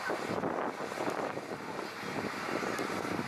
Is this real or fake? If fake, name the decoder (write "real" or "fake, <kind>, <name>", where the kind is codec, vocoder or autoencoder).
real